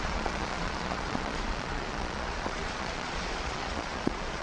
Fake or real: fake